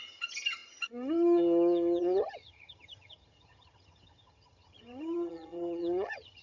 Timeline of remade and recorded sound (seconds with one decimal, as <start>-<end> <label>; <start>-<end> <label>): 0.0-6.4 remade